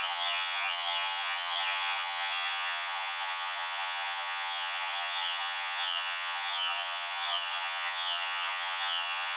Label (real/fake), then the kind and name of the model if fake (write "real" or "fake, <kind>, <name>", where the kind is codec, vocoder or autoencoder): fake, vocoder, HiFi-GAN